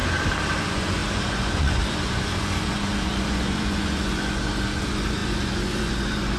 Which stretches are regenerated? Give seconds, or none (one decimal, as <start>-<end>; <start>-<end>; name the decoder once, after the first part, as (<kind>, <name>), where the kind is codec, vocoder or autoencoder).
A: 0.6-6.4 (vocoder, Vocos)